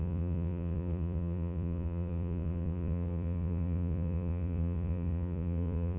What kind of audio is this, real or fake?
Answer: fake